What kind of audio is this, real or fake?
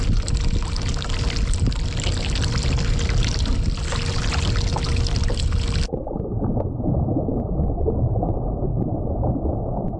real